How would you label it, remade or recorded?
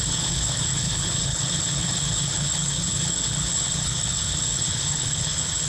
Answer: remade